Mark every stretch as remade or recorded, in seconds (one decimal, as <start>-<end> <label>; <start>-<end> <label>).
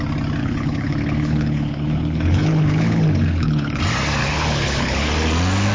0.0-0.4 recorded; 0.4-3.8 remade; 3.8-4.2 recorded; 4.2-5.1 remade; 5.1-5.7 recorded